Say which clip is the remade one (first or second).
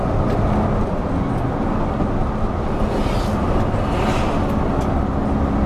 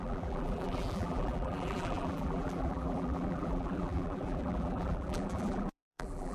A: second